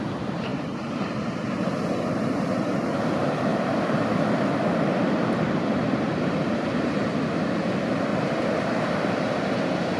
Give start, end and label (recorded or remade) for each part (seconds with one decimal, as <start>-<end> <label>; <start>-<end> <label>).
0.0-3.5 recorded; 3.5-7.2 remade; 7.2-8.1 recorded; 8.1-9.1 remade; 9.1-10.0 recorded

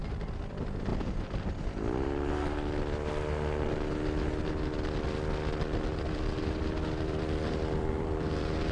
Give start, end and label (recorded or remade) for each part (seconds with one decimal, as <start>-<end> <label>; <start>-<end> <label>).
0.0-0.5 recorded; 0.5-0.9 remade; 0.9-5.9 recorded; 5.9-8.7 remade